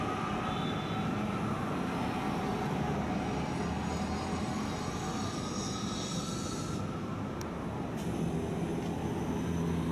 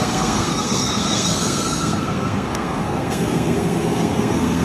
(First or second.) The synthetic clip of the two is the second